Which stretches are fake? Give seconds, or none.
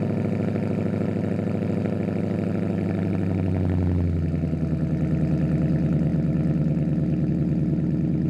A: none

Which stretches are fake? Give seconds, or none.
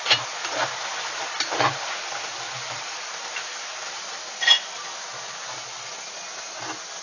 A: none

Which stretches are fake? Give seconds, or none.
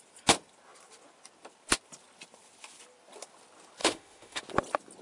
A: 3.8-4.4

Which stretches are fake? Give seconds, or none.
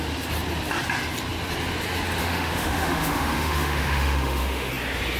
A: 2.2-4.7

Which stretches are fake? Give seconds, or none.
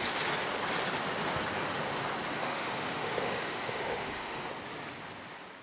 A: 2.4-4.5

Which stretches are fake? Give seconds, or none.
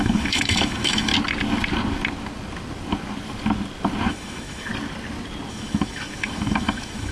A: 0.0-1.1; 4.1-4.7; 5.5-7.1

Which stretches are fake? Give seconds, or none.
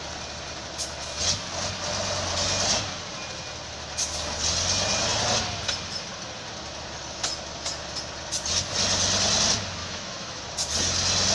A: 9.8-10.4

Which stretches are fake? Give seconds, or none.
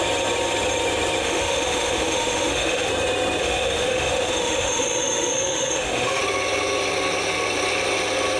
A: 1.2-2.9; 3.4-6.2